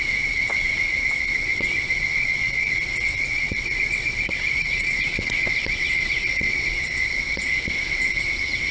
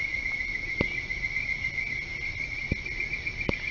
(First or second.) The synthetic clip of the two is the first